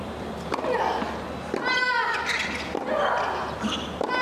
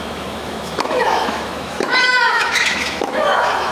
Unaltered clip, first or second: first